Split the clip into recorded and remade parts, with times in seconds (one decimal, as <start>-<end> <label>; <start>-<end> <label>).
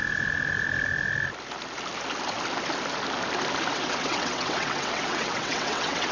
0.0-3.7 recorded; 3.7-6.1 remade